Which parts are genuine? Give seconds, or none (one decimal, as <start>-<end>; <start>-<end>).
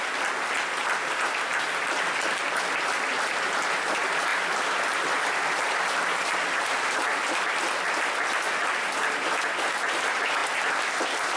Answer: 0.0-4.3; 8.0-11.4